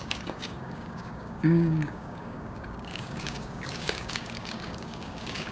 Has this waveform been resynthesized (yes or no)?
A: yes